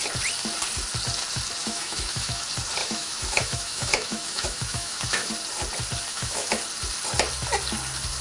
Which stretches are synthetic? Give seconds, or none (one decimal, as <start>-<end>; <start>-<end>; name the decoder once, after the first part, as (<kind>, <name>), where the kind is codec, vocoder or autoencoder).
1.6-2.4 (autoencoder, DAC-VAE); 2.8-5.3; 6.1-6.6